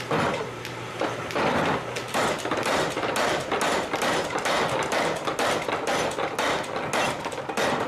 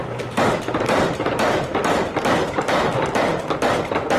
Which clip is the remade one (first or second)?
second